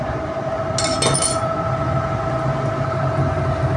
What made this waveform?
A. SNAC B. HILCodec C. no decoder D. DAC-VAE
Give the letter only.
C